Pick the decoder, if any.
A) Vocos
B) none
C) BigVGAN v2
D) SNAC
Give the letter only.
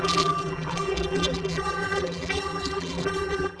C